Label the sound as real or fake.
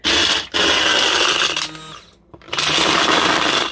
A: real